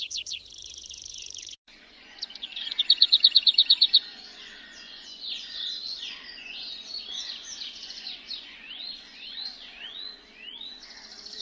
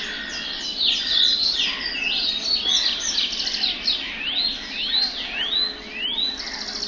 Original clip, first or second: second